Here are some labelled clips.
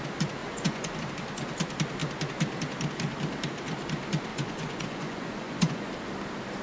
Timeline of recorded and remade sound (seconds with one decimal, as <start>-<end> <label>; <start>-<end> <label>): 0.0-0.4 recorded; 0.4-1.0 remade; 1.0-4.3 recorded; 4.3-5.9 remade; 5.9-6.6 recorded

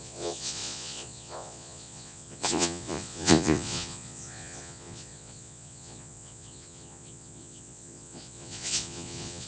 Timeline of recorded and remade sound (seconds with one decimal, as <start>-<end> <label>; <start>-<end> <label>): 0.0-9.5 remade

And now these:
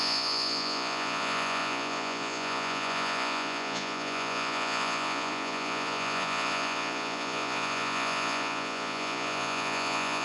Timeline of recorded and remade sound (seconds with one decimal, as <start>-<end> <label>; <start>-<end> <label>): 0.0-10.2 remade

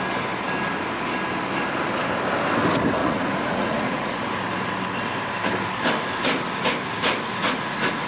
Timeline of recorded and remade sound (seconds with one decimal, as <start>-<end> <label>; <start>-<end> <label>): 0.0-3.0 recorded; 3.0-4.2 remade; 4.2-7.4 recorded; 7.4-8.1 remade

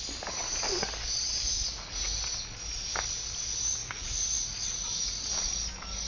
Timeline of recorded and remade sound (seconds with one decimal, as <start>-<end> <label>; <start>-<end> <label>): 0.0-1.7 recorded; 1.7-2.2 remade; 2.2-3.8 recorded; 3.8-5.2 remade; 5.2-6.1 recorded